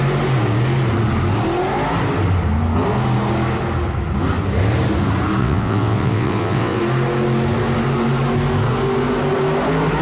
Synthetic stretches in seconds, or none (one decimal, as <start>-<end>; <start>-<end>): 5.4-6.8